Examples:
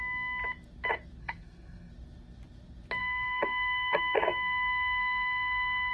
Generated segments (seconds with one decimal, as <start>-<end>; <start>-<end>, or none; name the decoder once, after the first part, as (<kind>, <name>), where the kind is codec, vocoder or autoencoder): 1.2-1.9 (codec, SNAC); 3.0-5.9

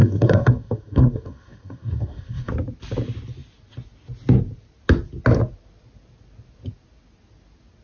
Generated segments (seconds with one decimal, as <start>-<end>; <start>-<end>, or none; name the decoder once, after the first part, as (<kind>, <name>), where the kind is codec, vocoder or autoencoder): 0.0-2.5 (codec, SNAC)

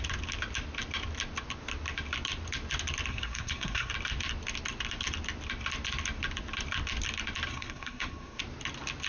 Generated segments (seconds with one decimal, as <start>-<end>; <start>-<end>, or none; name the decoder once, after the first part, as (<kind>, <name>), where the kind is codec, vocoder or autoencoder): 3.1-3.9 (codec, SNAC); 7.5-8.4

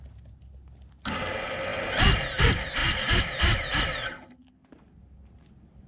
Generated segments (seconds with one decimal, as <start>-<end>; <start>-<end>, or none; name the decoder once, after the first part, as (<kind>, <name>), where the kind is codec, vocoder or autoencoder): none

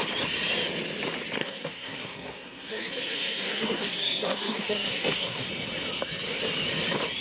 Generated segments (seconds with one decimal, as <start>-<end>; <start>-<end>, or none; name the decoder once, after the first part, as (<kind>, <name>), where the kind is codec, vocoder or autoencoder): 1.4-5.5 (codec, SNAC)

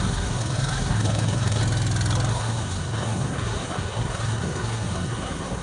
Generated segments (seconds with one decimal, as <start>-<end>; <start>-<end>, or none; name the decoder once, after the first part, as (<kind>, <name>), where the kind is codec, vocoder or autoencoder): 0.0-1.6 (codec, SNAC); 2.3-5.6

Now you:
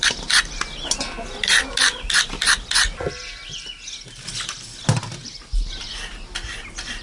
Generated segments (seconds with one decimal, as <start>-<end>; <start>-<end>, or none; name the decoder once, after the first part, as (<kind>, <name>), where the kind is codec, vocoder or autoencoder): none